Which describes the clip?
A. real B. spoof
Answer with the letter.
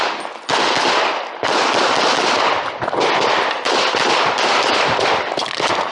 A